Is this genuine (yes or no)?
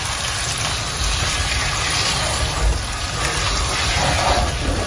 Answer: yes